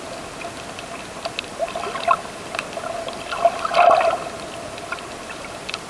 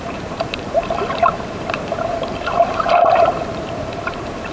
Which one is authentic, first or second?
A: first